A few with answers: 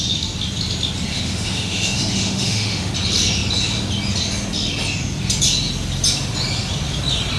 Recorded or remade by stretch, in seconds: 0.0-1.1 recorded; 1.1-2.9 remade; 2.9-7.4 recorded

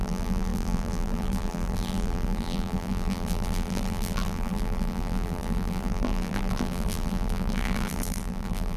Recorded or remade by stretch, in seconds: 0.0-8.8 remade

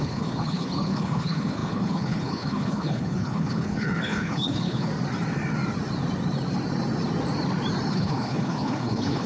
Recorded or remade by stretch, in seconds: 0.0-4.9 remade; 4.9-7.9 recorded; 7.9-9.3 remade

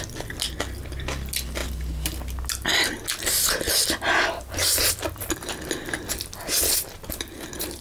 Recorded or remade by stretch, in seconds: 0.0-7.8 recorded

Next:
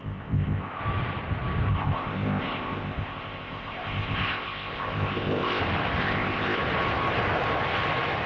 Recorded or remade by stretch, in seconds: 0.0-0.8 remade; 0.8-1.7 recorded; 1.7-5.6 remade; 5.6-6.0 recorded; 6.0-6.6 remade; 6.6-8.3 recorded